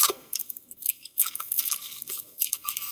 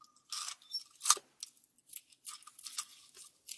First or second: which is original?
second